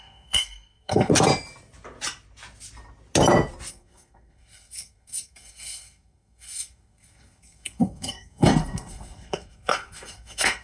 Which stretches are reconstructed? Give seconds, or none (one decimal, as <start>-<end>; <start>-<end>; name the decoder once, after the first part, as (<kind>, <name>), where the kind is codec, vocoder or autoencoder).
0.0-1.1 (codec, SNAC); 3.7-10.6